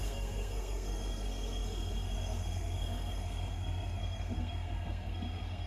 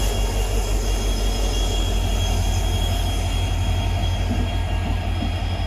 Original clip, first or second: second